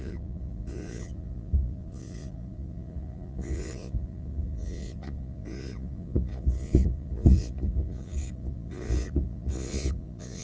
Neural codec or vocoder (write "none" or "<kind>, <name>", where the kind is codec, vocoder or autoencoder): vocoder, Vocos